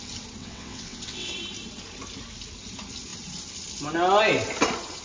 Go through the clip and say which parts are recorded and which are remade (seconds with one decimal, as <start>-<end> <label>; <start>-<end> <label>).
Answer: 0.0-0.4 recorded; 0.4-1.3 remade; 1.3-5.0 recorded